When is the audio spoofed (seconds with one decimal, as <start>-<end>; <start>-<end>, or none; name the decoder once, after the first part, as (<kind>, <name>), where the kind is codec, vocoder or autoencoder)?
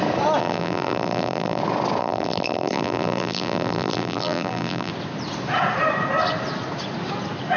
0.4-1.6 (vocoder, BigVGAN v2); 2.0-4.9